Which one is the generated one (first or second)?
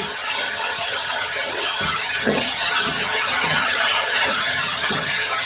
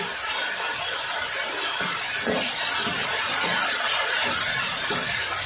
first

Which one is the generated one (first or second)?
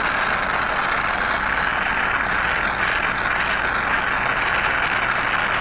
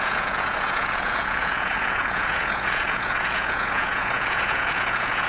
second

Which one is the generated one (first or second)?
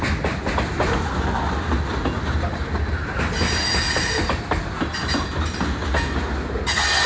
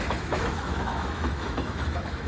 second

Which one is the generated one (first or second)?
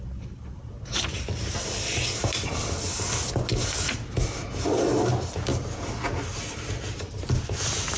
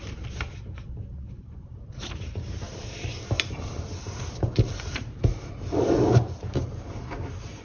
second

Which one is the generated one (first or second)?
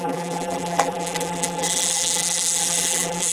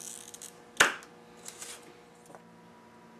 first